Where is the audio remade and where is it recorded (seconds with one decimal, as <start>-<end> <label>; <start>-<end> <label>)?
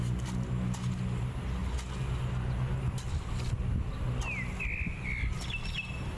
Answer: 0.0-6.2 recorded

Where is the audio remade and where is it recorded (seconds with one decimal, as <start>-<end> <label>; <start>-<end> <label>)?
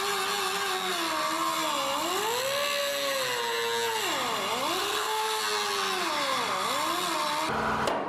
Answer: 0.0-4.8 recorded; 4.8-5.4 remade; 5.4-8.1 recorded